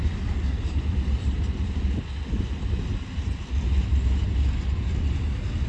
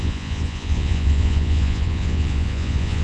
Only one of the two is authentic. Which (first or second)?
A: first